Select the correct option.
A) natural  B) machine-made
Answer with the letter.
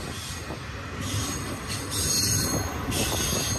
A